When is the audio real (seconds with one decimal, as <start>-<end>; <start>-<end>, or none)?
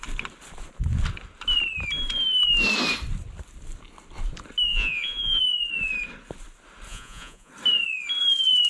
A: 0.0-4.7; 5.4-6.9; 7.5-8.7